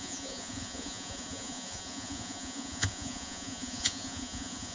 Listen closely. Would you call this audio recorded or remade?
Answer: remade